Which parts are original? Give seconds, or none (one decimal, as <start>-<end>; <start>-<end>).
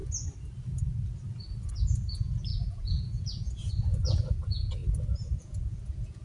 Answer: 0.0-1.7; 4.8-5.4